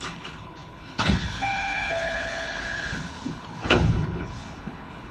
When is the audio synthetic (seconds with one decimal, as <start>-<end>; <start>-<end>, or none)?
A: 0.0-5.1